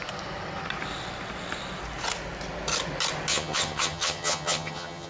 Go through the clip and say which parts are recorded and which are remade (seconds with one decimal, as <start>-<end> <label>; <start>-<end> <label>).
0.0-3.3 recorded; 3.3-5.1 remade